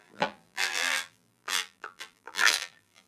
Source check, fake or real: fake